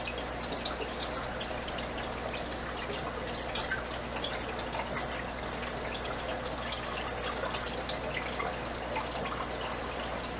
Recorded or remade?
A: recorded